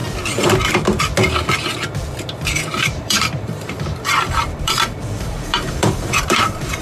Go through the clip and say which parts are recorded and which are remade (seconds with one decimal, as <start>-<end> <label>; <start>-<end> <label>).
0.0-2.8 recorded; 2.8-6.8 remade